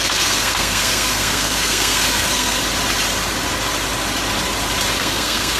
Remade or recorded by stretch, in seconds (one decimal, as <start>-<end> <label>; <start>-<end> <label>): 0.0-2.6 remade; 2.6-5.0 recorded; 5.0-5.6 remade